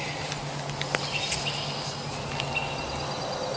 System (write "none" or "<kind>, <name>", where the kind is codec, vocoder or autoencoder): none